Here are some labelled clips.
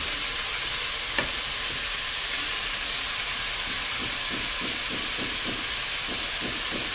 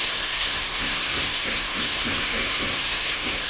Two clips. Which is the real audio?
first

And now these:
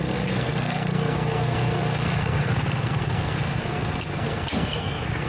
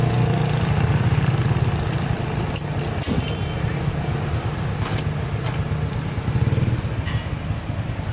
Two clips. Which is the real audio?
second